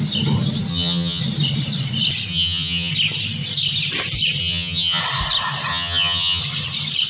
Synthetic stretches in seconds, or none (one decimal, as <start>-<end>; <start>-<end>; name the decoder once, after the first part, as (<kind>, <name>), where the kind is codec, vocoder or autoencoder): 0.7-1.2 (vocoder, HiFi-GAN); 2.3-2.9; 4.4-5.0; 5.7-6.4